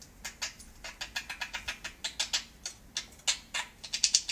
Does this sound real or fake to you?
real